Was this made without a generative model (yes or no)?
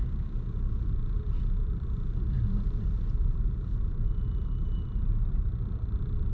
no